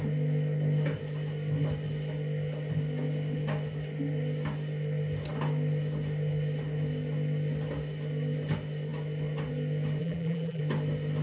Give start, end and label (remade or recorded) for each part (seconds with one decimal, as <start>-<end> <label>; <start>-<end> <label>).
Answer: 0.0-10.0 recorded; 10.0-10.6 remade; 10.6-11.2 recorded